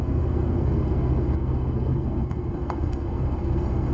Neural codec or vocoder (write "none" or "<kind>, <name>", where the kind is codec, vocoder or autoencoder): codec, SNAC